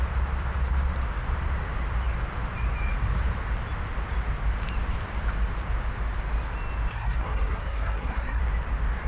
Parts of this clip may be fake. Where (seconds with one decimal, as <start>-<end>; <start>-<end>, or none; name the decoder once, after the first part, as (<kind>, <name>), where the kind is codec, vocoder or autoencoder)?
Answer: 6.9-8.4 (codec, SNAC)